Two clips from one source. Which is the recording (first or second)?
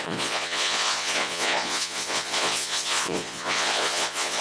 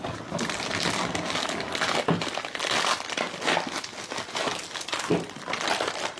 second